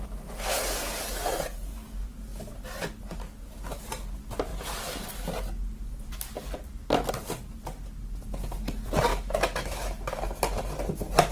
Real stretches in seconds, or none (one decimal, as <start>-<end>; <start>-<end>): 0.0-9.1; 10.2-11.3